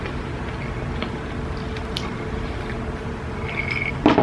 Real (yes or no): yes